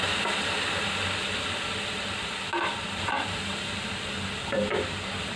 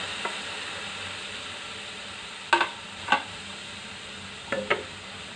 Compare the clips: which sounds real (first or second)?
second